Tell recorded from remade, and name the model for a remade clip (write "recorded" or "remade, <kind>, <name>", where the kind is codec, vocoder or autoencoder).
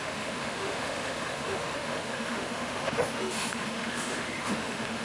remade, autoencoder, DAC-VAE